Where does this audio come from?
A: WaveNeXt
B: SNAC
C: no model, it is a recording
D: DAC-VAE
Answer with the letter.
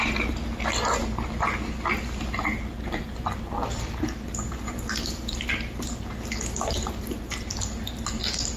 C